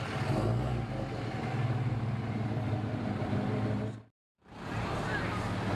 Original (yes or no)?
yes